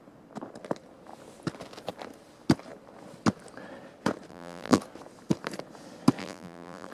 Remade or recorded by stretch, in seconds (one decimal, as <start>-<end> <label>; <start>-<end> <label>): 0.0-4.3 recorded; 4.3-4.8 remade; 4.8-6.2 recorded; 6.2-6.9 remade